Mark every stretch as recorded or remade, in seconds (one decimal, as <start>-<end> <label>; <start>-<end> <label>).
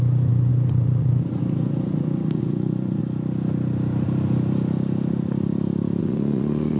0.0-3.0 remade; 3.0-6.0 recorded; 6.0-6.8 remade